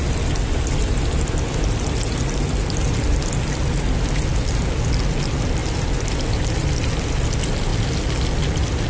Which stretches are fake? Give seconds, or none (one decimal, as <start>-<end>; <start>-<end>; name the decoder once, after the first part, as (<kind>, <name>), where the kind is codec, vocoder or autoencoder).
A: none